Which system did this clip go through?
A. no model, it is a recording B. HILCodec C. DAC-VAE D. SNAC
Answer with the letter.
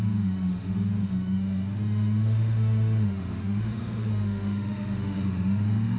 C